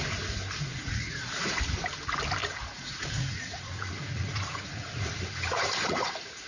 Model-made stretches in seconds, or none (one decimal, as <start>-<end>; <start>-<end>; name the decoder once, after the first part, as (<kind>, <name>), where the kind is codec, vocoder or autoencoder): 0.7-1.6 (vocoder, Vocos); 2.4-6.1